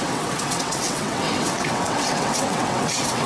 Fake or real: fake